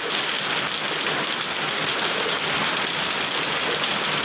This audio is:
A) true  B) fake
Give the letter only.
A